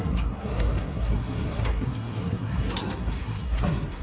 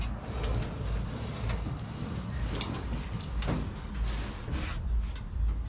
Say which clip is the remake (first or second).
first